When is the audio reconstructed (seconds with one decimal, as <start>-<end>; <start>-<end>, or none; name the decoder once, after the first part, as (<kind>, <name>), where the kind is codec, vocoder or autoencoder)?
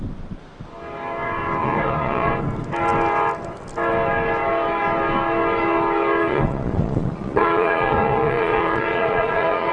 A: 1.6-2.3 (vocoder, Vocos); 6.2-9.7